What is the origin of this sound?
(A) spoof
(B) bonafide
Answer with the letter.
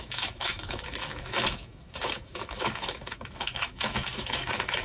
A